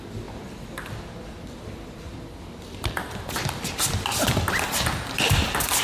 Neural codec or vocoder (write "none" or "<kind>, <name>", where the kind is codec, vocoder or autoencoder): none